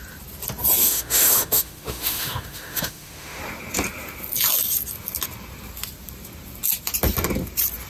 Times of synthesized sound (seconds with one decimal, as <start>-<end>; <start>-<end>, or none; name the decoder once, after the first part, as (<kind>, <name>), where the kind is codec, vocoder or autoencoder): 0.8-3.4 (autoencoder, DAC-VAE)